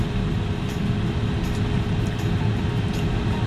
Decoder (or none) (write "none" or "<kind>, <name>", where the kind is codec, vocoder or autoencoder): none